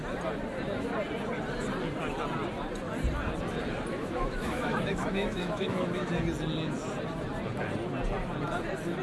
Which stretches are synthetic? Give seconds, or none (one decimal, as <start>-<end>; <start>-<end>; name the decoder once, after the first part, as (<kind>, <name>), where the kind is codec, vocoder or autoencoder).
3.9-6.1 (autoencoder, DAC-VAE)